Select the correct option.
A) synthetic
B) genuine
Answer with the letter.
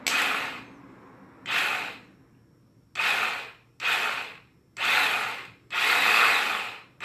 B